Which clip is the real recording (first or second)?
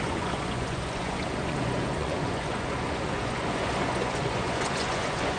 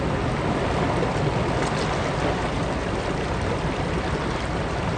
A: second